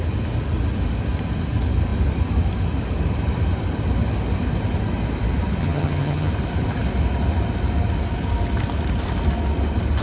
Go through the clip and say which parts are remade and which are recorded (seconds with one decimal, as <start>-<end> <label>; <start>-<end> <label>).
0.0-5.6 recorded; 5.6-6.3 remade; 6.3-10.0 recorded